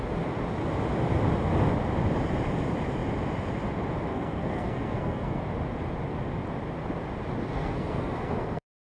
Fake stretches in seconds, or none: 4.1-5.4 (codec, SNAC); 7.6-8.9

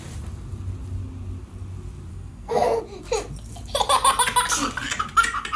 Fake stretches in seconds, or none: 2.1-2.8 (codec, SNAC)

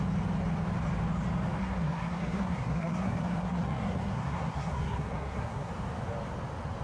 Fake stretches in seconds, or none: 1.6-5.7 (codec, SNAC)

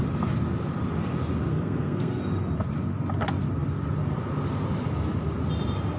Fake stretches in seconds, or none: 1.5-2.2 (codec, SNAC)

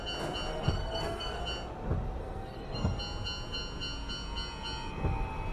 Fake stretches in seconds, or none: 0.5-1.4 (codec, SNAC); 2.2-3.0

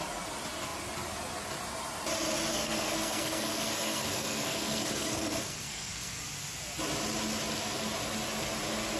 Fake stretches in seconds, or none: 2.5-6.2 (codec, SNAC)

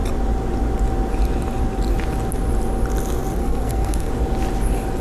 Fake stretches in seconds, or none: 3.4-4.1 (codec, SNAC)

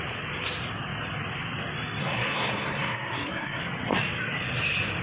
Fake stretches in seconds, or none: 2.0-3.6 (codec, SNAC)